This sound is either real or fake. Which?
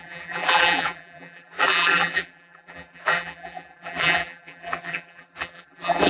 fake